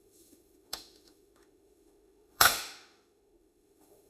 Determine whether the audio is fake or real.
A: fake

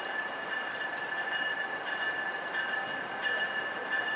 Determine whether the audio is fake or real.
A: real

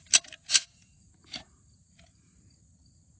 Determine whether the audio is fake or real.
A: fake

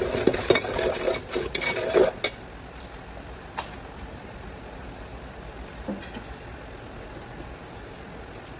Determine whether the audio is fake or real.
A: real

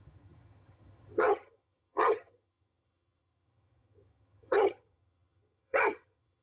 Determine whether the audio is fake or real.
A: fake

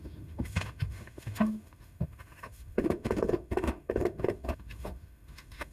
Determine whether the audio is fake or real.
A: fake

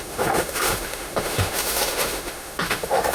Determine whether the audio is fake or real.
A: fake